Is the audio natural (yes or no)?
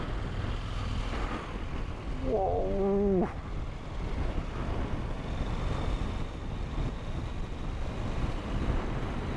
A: yes